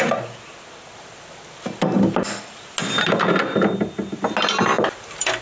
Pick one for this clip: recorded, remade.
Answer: recorded